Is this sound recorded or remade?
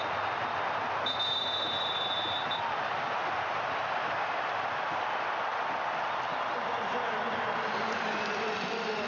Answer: remade